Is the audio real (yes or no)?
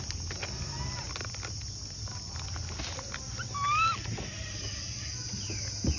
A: yes